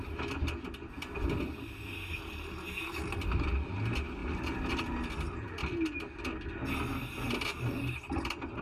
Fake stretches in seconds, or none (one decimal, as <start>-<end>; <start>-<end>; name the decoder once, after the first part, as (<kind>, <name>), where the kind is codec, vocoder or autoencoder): 4.2-4.8 (vocoder, BigVGAN v2)